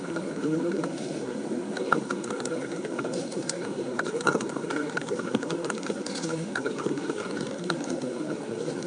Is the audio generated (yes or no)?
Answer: yes